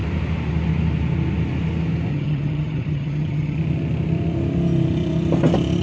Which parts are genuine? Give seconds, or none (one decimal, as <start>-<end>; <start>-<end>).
0.0-2.1; 3.6-5.8